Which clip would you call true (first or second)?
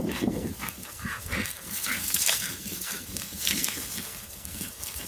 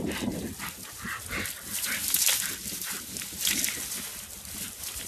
second